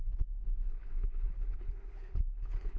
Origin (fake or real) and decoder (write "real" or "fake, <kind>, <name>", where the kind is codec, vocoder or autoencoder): fake, codec, HILCodec